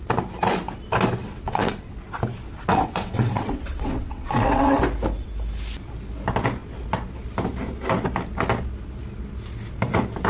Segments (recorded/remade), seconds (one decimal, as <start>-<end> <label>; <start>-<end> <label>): 0.0-1.2 recorded; 1.2-1.9 remade; 1.9-2.7 recorded; 2.7-4.8 remade; 4.8-10.3 recorded